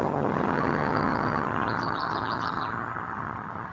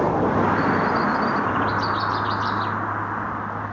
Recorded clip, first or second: second